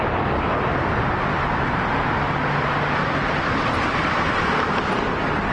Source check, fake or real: real